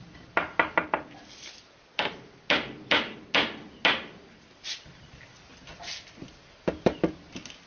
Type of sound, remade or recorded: recorded